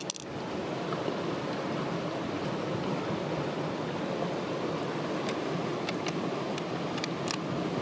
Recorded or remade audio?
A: recorded